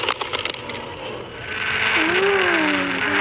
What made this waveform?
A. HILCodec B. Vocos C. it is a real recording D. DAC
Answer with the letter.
C